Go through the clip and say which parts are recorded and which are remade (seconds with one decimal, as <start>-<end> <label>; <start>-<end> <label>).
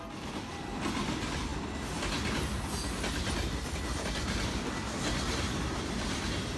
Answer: 0.0-6.6 recorded